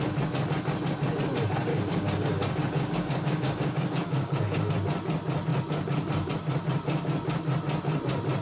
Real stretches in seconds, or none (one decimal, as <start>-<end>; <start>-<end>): 0.0-1.7; 4.7-8.4

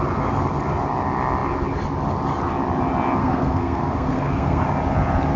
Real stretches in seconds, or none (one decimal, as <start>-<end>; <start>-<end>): 0.0-3.2; 4.6-5.4

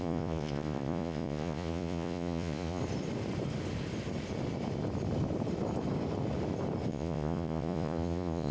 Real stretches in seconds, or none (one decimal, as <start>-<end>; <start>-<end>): 2.8-6.9

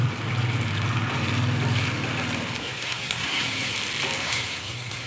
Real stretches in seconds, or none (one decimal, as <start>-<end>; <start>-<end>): 0.0-2.6; 3.7-4.2

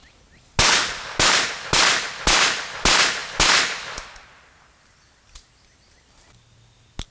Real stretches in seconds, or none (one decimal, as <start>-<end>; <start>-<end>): 0.0-7.1